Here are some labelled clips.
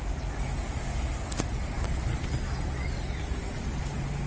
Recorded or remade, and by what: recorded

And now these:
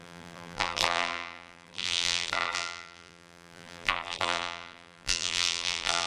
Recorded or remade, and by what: remade, vocoder, BigVGAN v2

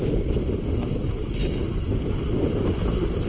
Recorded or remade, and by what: recorded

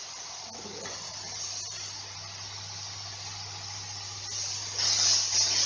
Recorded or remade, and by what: recorded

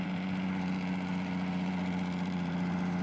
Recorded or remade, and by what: remade, vocoder, BigVGAN v2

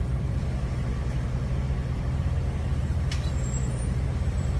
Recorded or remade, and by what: remade, vocoder, BigVGAN v2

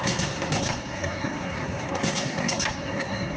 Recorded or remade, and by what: remade, codec, SNAC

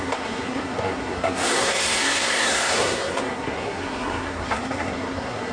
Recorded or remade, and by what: remade, codec, SNAC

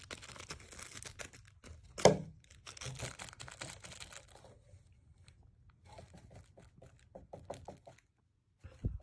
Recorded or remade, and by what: recorded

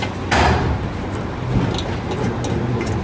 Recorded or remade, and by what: recorded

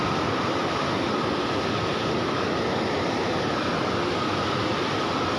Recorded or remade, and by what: recorded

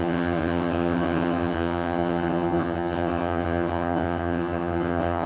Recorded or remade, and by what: remade, vocoder, HiFi-GAN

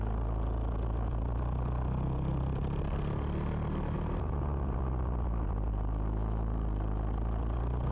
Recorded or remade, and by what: recorded